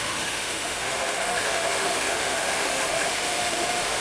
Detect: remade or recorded remade